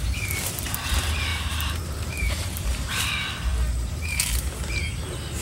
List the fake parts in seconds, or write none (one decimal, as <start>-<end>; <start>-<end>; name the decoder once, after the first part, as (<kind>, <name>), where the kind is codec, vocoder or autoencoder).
1.3-3.0 (vocoder, BigVGAN v2)